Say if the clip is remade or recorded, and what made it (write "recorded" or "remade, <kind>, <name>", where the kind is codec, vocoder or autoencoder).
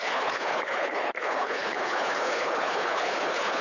remade, codec, HILCodec